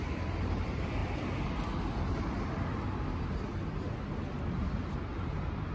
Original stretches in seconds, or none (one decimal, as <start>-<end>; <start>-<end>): 1.0-4.4